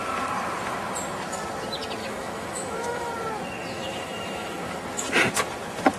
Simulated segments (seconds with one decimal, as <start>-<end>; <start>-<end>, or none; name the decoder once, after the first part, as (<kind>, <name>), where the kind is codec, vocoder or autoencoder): 2.0-3.1 (autoencoder, DAC-VAE); 3.6-4.8